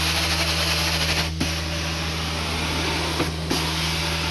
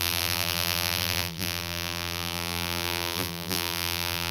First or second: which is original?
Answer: first